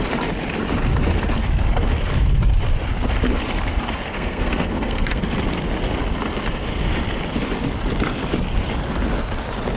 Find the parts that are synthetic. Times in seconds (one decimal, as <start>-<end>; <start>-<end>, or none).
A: 4.1-5.2